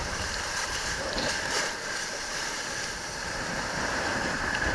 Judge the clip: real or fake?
fake